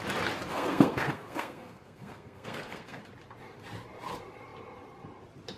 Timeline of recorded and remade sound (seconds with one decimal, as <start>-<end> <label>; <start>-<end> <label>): 0.0-0.5 recorded; 0.5-3.0 remade; 3.0-5.6 recorded